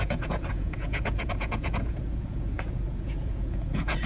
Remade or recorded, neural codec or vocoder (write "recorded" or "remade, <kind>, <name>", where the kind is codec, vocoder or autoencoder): remade, vocoder, Vocos